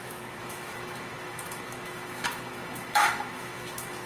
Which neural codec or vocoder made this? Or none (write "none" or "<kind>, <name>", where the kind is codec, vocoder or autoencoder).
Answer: autoencoder, DAC-VAE